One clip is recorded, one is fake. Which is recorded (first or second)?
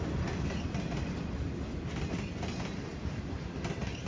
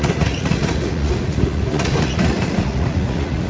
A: first